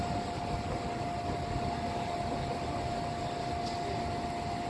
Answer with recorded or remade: recorded